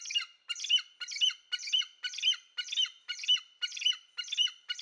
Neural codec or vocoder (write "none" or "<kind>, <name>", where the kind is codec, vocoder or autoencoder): none